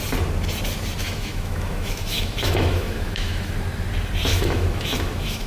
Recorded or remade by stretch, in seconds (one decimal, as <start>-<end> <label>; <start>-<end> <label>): 0.0-1.0 recorded; 1.0-3.5 remade; 3.5-4.3 recorded; 4.3-5.5 remade

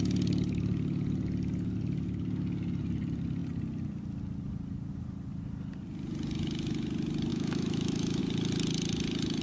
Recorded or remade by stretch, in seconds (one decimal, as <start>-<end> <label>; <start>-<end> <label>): 0.0-7.3 recorded; 7.3-8.2 remade; 8.2-9.4 recorded

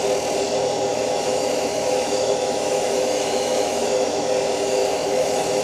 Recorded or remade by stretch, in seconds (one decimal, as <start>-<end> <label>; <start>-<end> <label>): 0.0-0.9 recorded; 0.9-4.2 remade; 4.2-4.8 recorded; 4.8-5.6 remade

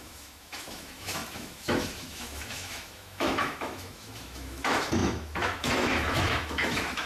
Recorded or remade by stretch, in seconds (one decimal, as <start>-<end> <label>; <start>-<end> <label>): 0.0-7.1 remade

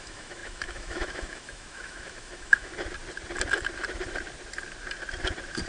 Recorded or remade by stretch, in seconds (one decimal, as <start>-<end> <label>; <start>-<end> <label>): 0.0-2.7 remade; 2.7-5.7 recorded

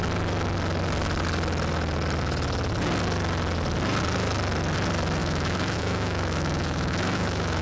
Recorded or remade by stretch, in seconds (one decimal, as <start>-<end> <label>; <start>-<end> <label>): 0.0-5.2 recorded; 5.2-7.6 remade